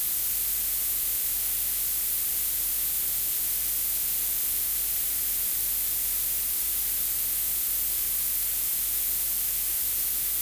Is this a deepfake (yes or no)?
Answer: no